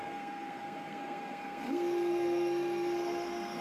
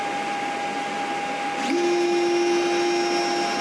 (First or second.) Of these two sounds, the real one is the second